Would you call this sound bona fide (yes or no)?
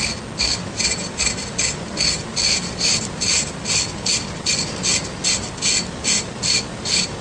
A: yes